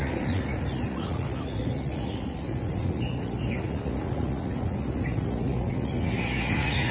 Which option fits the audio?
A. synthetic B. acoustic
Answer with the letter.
A